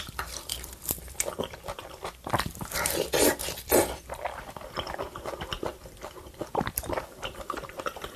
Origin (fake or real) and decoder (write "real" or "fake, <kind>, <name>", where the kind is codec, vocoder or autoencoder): fake, vocoder, BigVGAN v2